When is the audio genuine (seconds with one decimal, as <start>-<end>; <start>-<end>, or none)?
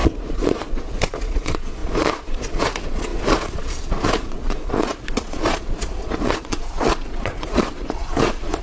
none